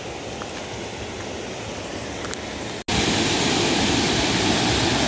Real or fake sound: real